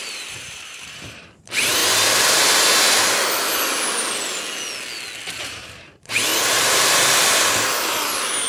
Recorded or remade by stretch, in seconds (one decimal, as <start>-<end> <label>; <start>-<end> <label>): 0.0-1.8 remade; 1.8-5.5 recorded; 5.5-6.3 remade; 6.3-8.5 recorded